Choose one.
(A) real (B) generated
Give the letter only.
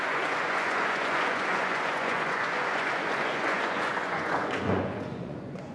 B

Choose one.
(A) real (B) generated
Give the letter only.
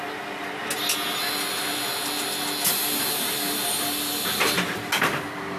A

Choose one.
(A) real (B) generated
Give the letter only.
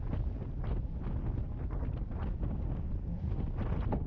A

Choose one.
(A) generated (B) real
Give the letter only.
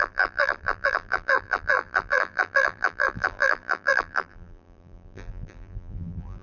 A